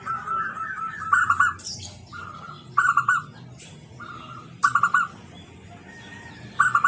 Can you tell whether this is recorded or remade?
recorded